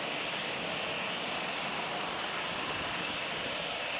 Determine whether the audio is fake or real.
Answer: real